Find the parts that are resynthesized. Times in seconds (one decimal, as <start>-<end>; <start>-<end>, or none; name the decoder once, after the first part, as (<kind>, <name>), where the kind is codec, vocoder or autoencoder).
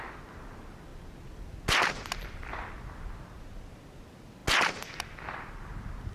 none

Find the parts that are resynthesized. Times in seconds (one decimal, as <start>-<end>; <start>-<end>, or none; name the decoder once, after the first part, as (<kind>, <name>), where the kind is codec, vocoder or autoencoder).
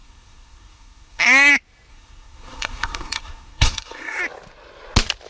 0.0-1.5 (codec, SNAC); 1.9-4.2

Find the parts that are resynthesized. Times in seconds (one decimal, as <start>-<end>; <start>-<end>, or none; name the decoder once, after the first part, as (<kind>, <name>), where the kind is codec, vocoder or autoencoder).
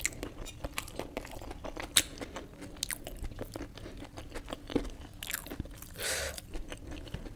none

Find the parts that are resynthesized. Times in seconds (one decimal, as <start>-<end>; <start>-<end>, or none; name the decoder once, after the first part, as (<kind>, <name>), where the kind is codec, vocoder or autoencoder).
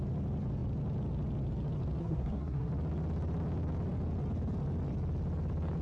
2.0-2.7 (codec, SNAC)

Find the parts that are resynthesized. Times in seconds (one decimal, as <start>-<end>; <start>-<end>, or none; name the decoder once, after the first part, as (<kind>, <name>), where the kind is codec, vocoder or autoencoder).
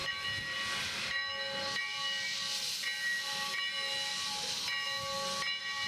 none